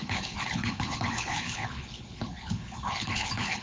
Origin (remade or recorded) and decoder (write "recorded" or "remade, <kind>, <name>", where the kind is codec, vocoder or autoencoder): remade, codec, HILCodec